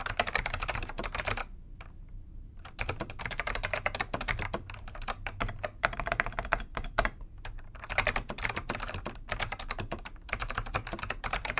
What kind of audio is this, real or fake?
fake